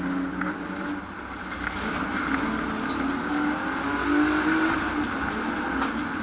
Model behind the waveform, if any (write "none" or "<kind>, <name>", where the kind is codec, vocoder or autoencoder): none